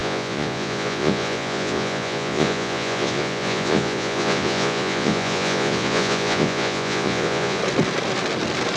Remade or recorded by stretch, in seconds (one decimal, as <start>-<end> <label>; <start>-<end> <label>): 0.0-7.6 remade; 7.6-8.8 recorded